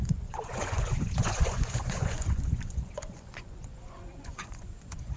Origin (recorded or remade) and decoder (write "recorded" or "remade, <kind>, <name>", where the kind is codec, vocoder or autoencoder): remade, vocoder, Vocos